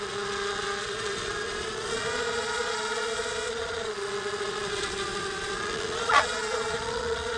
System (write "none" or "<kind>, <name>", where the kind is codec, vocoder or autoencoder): vocoder, Vocos